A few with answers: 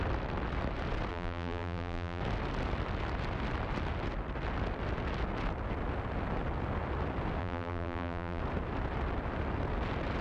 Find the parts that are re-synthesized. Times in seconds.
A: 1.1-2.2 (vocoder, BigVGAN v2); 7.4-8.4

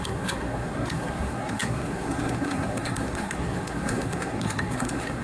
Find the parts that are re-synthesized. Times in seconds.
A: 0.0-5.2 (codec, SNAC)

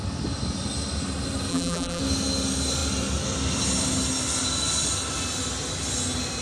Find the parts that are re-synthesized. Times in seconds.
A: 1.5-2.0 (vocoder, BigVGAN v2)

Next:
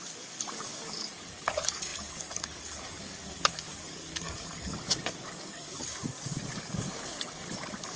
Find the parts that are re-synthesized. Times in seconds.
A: 0.0-8.0 (codec, DAC)